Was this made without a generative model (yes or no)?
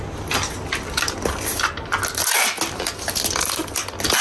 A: yes